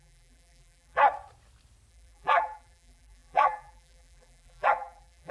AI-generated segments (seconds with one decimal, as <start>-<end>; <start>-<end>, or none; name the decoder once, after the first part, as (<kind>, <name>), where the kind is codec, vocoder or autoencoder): 0.0-1.0 (vocoder, BigVGAN v2); 1.9-5.3